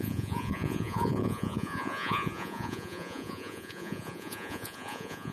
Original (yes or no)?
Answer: no